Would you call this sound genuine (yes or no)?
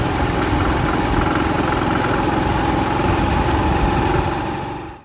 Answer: yes